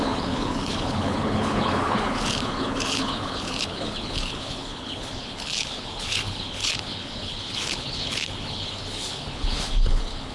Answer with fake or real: fake